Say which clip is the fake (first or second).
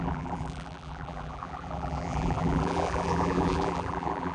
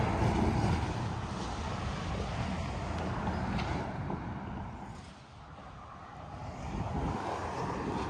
first